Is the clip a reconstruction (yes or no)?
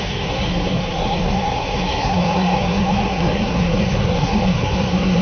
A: yes